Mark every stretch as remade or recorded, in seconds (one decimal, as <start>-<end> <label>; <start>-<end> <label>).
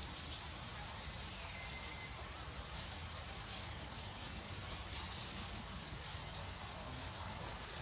0.0-2.7 recorded; 2.7-4.6 remade; 4.6-5.2 recorded; 5.2-7.8 remade